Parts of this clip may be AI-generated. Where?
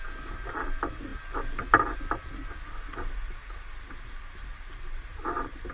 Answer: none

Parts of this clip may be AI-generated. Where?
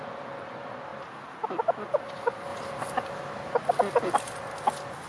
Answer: none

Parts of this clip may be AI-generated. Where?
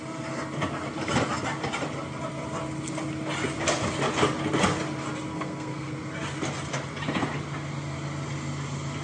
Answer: 5.3-5.9 (codec, SNAC)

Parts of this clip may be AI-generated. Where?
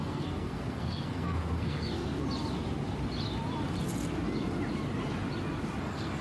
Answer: 0.0-2.1 (codec, SNAC); 5.8-6.2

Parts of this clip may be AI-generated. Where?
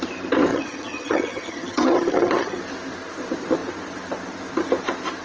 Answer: 0.5-2.6 (vocoder, HiFi-GAN)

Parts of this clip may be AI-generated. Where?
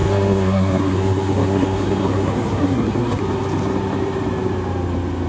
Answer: 0.0-3.2 (codec, SNAC)